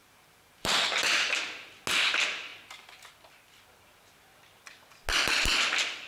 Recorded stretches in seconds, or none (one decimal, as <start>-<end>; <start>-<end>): 1.3-6.1